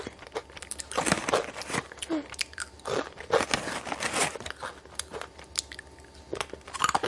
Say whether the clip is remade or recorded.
recorded